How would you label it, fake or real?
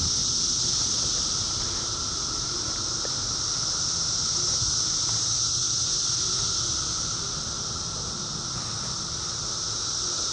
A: real